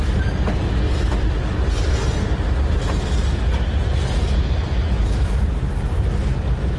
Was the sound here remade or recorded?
recorded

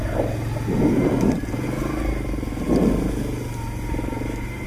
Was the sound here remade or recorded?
recorded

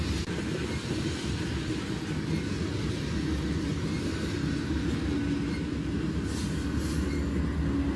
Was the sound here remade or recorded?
recorded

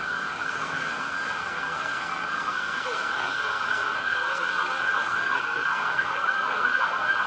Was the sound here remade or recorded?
remade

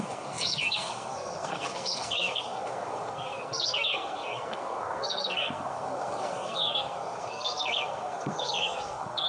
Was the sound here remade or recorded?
remade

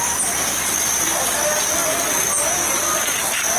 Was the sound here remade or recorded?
recorded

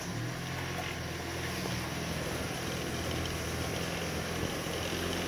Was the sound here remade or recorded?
recorded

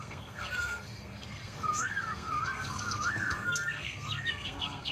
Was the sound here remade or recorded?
remade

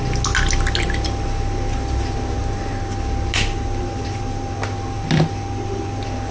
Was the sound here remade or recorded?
recorded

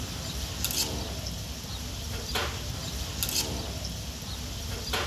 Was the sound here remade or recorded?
recorded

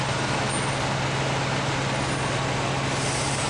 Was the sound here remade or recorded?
recorded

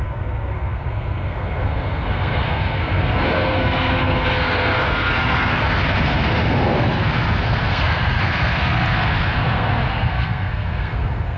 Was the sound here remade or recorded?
remade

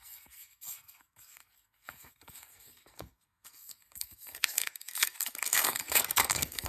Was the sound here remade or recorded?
remade